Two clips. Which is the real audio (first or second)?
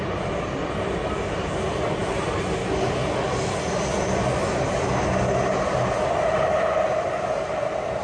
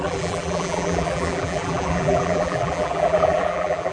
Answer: first